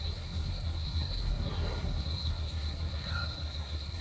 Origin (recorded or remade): remade